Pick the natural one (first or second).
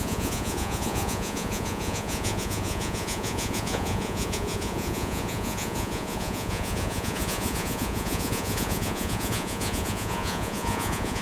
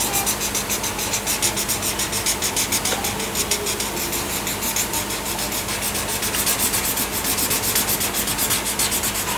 second